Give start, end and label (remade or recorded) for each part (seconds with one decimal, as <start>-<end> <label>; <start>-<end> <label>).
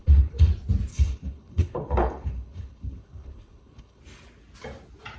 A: 0.0-0.5 remade; 0.5-0.9 recorded; 0.9-4.0 remade; 4.0-5.2 recorded